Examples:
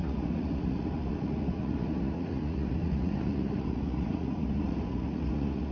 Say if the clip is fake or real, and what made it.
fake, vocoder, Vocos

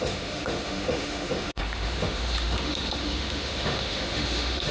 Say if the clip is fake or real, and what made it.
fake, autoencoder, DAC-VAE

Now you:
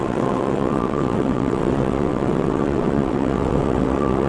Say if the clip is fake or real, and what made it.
fake, vocoder, WaveNeXt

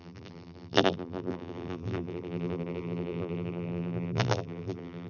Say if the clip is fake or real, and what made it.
fake, vocoder, BigVGAN v2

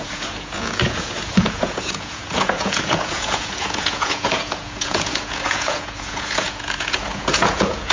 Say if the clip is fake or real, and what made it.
fake, vocoder, Vocos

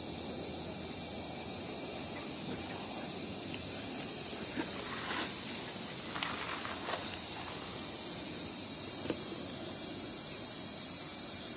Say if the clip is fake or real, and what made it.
real